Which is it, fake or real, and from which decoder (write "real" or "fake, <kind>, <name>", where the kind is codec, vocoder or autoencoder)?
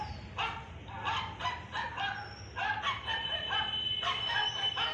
real